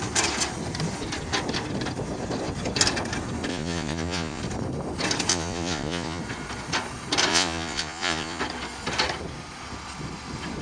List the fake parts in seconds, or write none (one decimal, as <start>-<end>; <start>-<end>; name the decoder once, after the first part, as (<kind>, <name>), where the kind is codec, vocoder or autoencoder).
3.5-4.4 (vocoder, Vocos); 5.3-6.2; 7.3-8.4